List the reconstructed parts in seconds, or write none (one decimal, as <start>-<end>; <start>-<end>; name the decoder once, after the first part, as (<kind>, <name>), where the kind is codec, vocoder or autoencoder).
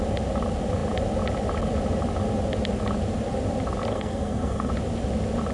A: 3.9-4.7 (codec, SNAC)